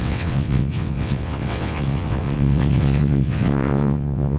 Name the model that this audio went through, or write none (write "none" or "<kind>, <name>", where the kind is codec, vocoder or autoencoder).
vocoder, WaveNeXt